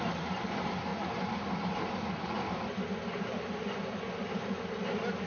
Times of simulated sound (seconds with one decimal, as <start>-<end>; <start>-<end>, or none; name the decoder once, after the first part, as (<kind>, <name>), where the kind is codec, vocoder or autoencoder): none